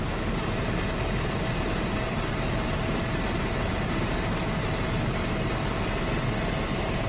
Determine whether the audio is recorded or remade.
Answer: remade